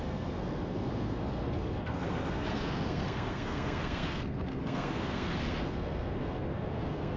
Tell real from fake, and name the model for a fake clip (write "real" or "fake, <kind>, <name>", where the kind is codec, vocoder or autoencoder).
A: fake, codec, SNAC